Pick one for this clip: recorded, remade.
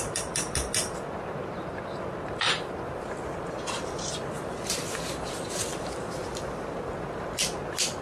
recorded